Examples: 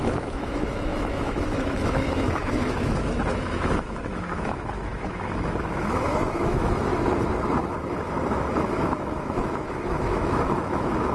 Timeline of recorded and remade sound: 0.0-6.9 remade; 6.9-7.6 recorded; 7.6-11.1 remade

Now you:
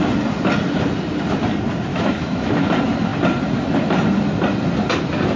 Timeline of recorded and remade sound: 0.0-1.9 recorded; 1.9-2.7 remade; 2.7-5.4 recorded

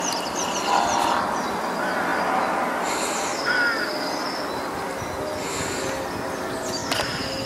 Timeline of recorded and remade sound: 0.0-7.5 recorded

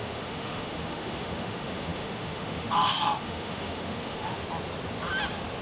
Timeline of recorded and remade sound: 0.0-4.4 remade; 4.4-5.6 recorded